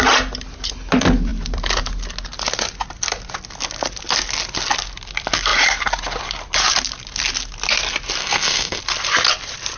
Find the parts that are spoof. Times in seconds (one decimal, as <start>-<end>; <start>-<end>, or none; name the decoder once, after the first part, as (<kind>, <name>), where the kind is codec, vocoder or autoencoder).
8.2-8.8 (codec, SNAC)